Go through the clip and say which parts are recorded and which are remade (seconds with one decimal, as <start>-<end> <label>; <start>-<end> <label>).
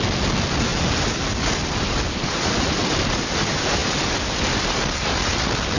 0.0-5.8 recorded